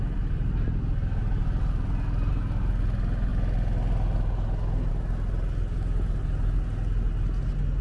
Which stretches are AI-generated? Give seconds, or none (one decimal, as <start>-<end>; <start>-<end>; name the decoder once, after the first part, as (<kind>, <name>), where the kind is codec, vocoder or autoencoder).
none